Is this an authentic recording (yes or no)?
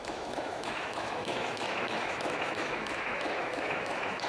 no